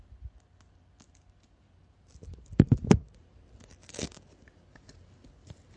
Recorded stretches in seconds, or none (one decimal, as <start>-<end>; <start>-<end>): 0.0-1.8; 3.5-5.8